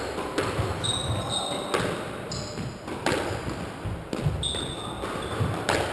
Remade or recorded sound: recorded